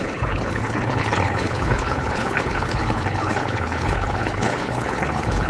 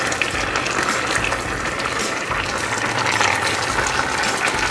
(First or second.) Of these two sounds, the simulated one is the first